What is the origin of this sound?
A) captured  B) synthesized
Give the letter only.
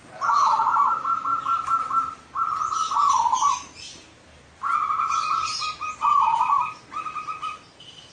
A